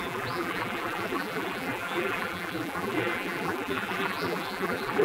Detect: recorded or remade remade